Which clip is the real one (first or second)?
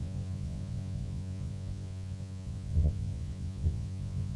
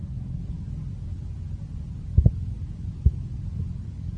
second